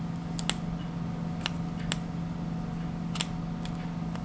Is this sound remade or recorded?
recorded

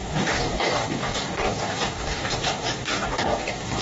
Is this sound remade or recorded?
remade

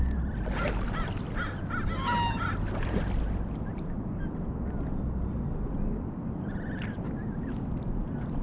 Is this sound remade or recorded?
recorded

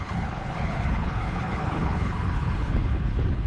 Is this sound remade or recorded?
remade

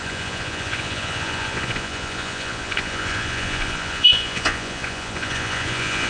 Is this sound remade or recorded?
remade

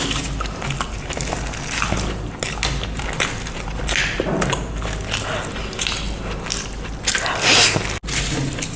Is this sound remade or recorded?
recorded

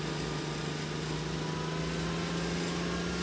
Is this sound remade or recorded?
recorded